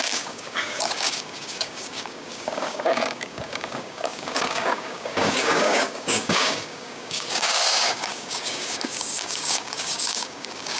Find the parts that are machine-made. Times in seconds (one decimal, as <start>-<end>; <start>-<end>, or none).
0.0-10.8